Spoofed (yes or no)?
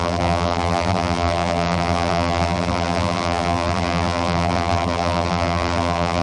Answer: yes